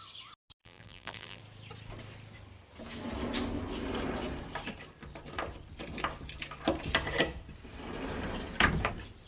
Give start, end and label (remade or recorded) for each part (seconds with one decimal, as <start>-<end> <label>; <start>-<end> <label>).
0.0-0.6 recorded; 0.6-1.4 remade; 1.4-9.3 recorded